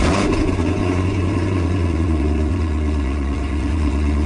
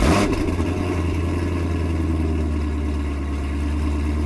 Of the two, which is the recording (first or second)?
second